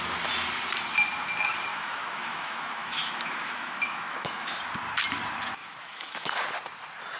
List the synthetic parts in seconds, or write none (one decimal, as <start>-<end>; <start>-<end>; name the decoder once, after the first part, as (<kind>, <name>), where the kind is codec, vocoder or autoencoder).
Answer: 1.7-4.6 (autoencoder, DAC-VAE); 5.6-6.3